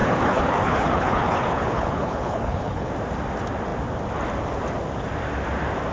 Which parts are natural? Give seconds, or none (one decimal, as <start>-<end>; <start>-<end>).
2.9-5.9